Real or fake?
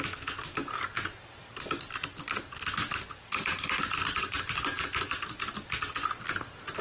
real